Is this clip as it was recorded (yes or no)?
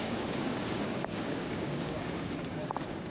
no